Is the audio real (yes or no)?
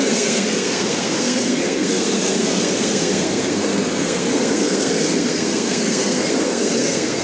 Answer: no